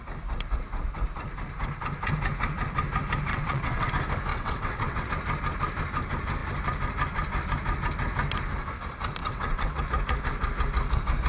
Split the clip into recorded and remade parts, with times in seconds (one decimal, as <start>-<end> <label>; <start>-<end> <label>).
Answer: 0.0-3.3 recorded; 3.3-3.9 remade; 3.9-4.3 recorded; 4.3-5.1 remade; 5.1-9.2 recorded; 9.2-9.8 remade; 9.8-11.3 recorded